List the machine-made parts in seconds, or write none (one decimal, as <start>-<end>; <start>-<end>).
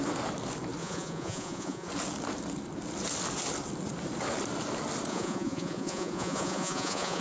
0.8-1.9; 5.1-7.2